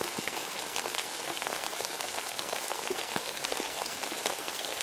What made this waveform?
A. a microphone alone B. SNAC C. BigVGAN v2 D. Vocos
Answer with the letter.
B